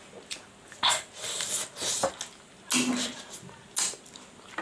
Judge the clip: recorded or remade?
recorded